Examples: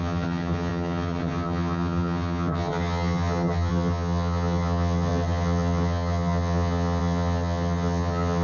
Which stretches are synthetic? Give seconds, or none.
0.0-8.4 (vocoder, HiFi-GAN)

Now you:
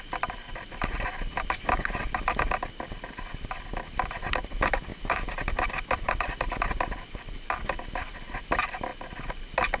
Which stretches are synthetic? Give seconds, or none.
none

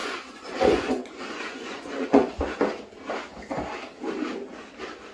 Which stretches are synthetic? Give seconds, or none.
0.0-2.4 (vocoder, Vocos)

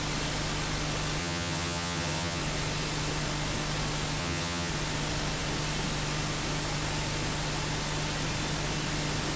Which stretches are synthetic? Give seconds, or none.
1.2-2.4 (vocoder, HiFi-GAN); 4.2-4.7

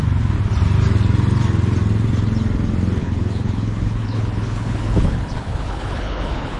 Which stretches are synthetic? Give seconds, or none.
3.0-6.6 (codec, HILCodec)